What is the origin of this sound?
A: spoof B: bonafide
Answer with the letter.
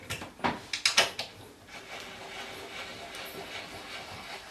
B